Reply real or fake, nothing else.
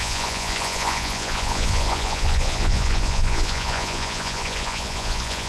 fake